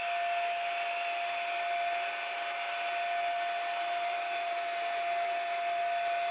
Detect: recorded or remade recorded